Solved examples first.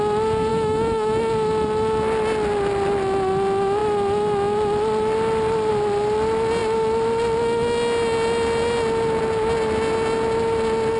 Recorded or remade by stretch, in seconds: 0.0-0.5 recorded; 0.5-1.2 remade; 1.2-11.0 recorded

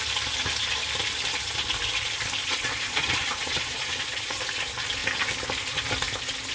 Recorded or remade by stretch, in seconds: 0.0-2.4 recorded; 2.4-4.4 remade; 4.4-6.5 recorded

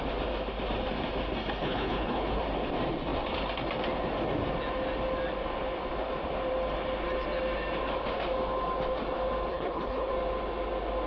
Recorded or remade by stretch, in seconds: 0.0-1.6 recorded; 1.6-2.4 remade; 2.4-9.5 recorded; 9.5-10.1 remade; 10.1-11.1 recorded

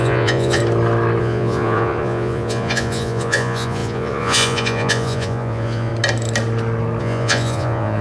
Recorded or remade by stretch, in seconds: 0.0-0.6 remade; 0.6-1.2 recorded; 1.2-5.9 remade; 5.9-7.0 recorded; 7.0-8.0 remade